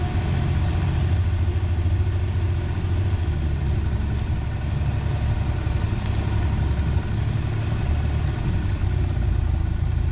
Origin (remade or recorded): recorded